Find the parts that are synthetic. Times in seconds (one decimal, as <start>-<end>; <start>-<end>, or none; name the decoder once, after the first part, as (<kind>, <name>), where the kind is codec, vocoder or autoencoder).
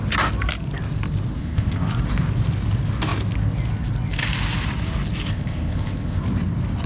1.4-1.9 (codec, ZipCodec); 5.3-6.2